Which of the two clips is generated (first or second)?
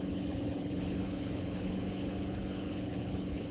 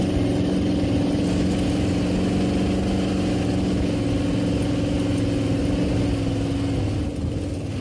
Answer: first